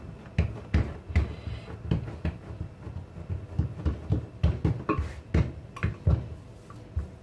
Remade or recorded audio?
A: recorded